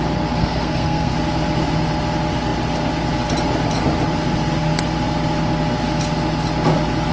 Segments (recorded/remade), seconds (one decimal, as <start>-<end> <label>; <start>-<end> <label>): 0.0-0.4 recorded; 0.4-1.1 remade; 1.1-7.1 recorded